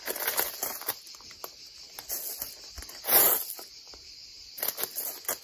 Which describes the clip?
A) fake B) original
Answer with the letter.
B